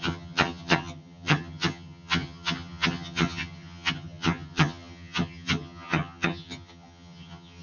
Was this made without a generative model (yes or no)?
no